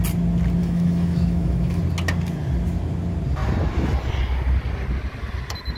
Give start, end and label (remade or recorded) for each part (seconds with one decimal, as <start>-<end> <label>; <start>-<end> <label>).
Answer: 0.0-0.6 recorded; 0.6-1.8 remade; 1.8-5.8 recorded